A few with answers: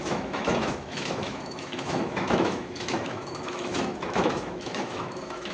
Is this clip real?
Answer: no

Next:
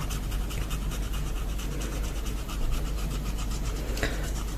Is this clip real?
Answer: yes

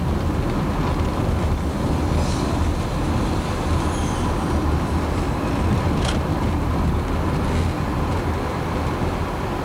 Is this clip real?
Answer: yes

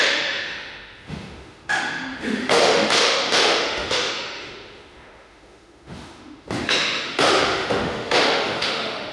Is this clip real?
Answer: no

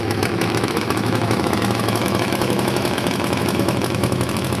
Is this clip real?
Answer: no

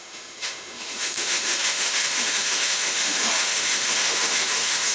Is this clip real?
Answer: no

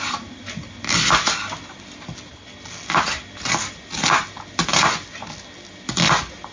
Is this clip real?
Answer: yes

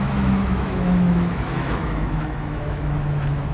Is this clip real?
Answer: no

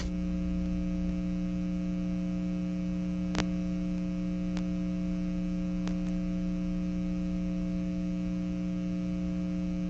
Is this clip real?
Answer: yes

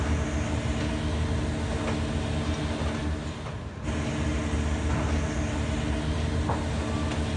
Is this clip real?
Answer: yes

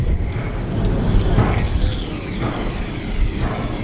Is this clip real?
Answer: yes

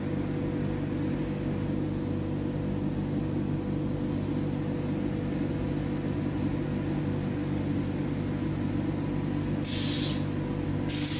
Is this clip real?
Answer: yes